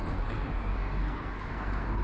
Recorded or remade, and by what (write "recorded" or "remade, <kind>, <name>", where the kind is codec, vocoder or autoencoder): remade, codec, SNAC